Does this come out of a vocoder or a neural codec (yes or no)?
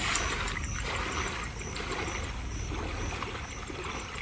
no